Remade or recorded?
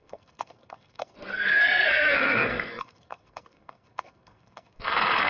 remade